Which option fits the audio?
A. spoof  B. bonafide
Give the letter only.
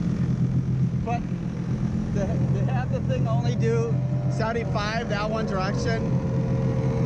B